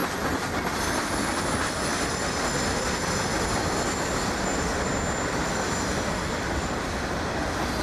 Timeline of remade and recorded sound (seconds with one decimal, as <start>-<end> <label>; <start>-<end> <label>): 0.0-7.8 recorded